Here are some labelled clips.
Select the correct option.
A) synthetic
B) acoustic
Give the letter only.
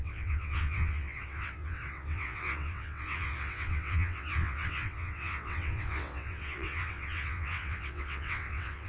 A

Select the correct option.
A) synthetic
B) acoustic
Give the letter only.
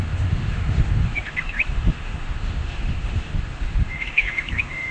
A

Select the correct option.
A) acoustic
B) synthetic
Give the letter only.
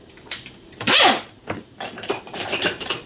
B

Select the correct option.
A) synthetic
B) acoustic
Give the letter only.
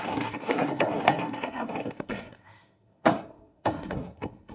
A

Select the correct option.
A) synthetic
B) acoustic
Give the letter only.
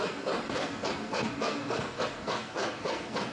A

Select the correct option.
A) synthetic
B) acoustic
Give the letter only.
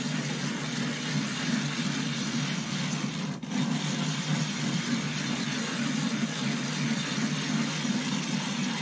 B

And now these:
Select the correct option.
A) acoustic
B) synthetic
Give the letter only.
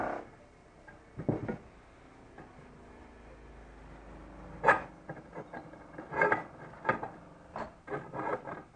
A